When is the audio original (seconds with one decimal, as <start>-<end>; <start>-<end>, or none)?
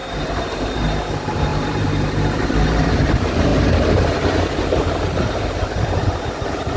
none